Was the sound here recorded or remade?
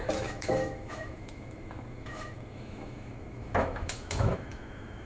remade